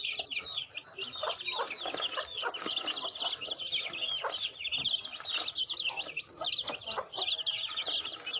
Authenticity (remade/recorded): recorded